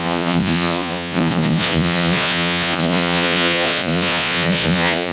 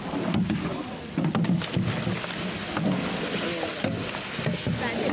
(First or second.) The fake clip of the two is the first